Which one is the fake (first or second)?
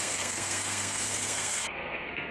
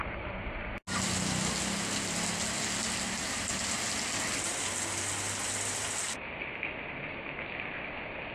first